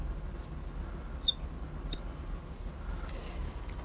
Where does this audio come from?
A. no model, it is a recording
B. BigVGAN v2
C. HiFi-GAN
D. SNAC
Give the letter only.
A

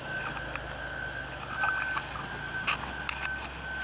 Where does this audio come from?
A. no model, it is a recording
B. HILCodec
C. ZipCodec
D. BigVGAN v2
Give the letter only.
A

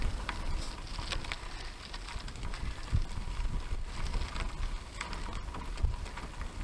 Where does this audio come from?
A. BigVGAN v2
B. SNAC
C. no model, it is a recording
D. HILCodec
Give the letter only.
C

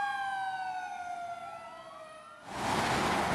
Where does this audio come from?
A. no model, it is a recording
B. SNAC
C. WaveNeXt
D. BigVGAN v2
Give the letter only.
A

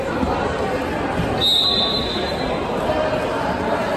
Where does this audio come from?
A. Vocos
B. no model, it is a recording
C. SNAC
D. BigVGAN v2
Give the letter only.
B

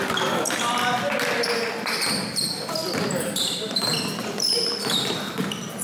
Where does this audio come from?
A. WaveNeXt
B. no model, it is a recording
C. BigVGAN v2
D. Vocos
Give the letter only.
C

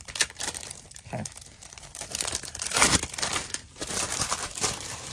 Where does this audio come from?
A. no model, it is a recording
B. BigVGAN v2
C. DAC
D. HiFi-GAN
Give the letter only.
B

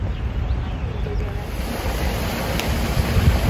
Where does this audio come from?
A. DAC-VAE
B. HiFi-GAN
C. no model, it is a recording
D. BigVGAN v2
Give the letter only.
C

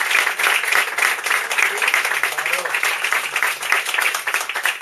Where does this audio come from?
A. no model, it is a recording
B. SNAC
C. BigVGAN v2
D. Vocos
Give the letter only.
A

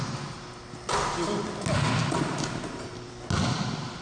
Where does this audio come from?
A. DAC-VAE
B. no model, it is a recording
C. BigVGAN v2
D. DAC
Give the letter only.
B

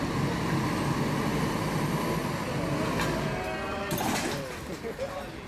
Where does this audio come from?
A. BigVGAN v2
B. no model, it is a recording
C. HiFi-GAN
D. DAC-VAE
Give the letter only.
B